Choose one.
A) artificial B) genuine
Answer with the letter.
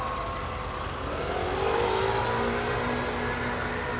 B